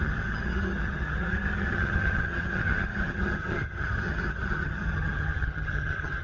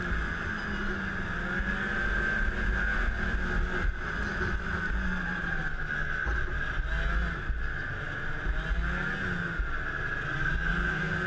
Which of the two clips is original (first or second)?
second